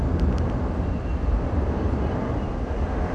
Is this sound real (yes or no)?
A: yes